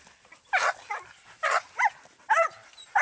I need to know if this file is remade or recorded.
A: recorded